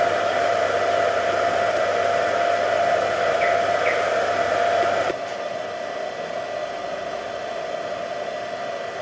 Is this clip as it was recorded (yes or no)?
yes